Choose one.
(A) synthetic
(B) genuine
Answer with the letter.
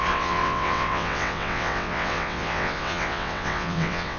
A